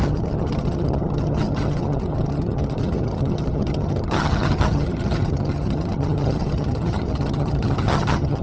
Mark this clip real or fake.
fake